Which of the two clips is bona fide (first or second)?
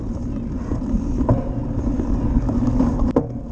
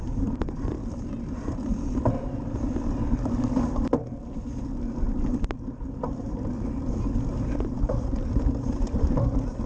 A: first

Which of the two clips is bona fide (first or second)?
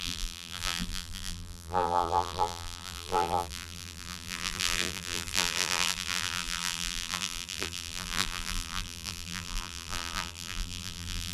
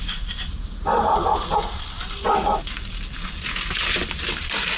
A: second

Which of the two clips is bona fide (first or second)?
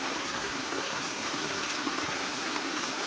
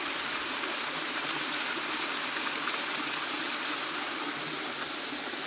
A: second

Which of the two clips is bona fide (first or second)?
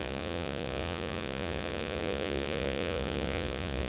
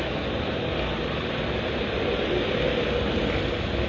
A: second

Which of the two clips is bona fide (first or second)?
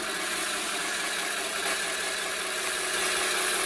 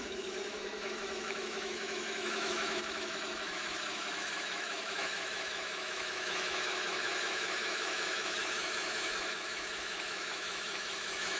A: first